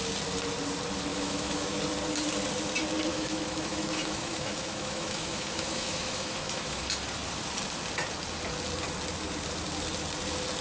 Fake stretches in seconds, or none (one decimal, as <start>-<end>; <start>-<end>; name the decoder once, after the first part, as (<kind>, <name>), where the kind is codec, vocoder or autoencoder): 1.1-1.8 (autoencoder, DAC-VAE); 3.1-6.8